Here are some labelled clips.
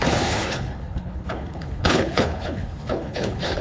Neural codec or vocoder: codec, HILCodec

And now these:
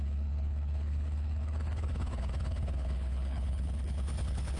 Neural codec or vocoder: codec, HILCodec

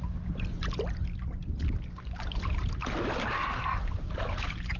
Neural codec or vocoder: none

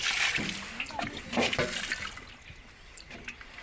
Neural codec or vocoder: none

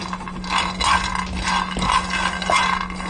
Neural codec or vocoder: none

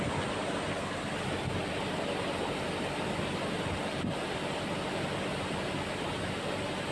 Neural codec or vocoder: none